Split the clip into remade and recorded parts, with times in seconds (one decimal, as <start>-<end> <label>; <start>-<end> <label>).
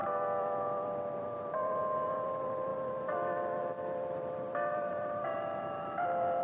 0.0-0.6 recorded; 0.6-6.4 remade